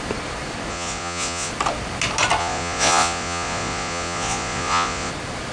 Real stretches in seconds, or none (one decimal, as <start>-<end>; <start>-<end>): 0.0-0.7; 1.5-2.4; 5.1-5.5